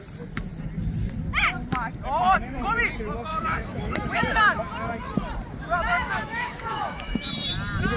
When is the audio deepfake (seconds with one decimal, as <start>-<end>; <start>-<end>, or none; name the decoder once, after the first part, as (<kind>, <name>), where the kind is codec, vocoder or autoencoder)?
3.3-4.4 (autoencoder, DAC-VAE); 5.9-7.3